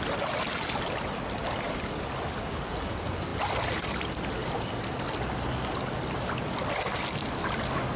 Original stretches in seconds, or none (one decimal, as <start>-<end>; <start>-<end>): 0.0-4.4; 5.1-8.0

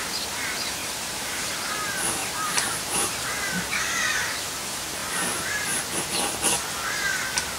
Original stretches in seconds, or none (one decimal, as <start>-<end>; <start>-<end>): 0.0-0.8; 1.5-2.2; 3.5-5.0; 5.8-7.6

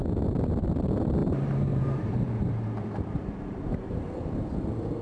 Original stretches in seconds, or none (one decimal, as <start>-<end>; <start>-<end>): 0.0-1.2; 4.2-5.0

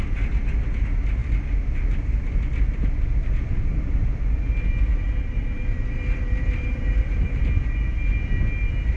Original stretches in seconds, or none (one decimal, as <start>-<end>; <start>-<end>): 0.0-4.9; 7.4-9.0

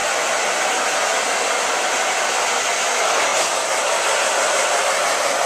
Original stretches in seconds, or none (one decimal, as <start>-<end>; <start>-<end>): 0.0-3.3; 4.0-5.5

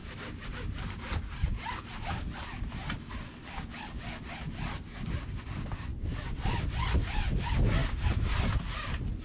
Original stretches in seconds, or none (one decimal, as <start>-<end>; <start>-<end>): 1.8-5.9; 6.6-9.2

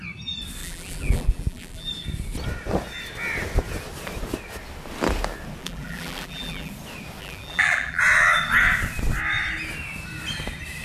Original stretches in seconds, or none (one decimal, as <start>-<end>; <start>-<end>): 0.0-0.6; 1.9-5.6; 6.7-7.2; 8.0-10.8

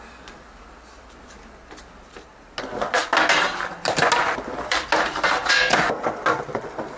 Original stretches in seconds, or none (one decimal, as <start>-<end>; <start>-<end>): 0.0-7.0